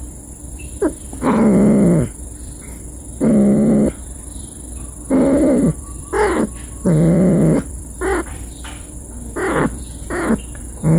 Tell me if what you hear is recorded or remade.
remade